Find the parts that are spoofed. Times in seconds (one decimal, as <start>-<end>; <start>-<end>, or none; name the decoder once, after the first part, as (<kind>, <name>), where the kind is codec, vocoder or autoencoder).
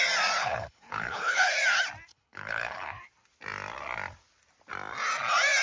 0.4-1.5 (codec, HILCodec); 2.1-3.0